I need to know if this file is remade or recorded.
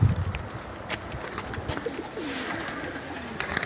recorded